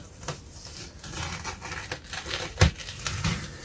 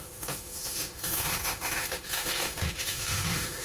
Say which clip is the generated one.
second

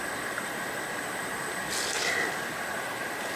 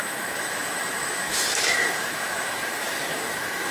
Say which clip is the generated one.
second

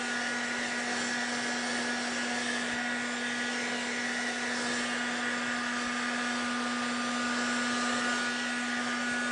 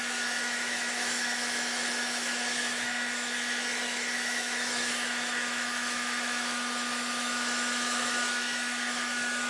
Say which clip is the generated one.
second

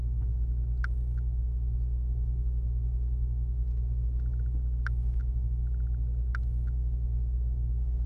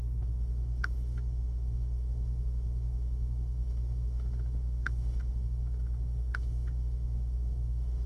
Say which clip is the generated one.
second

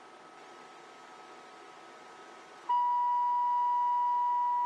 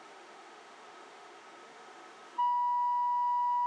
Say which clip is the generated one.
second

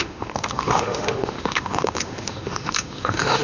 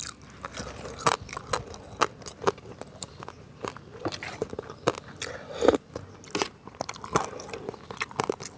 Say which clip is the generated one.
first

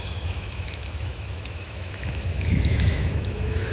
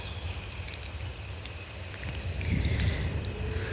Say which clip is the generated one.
first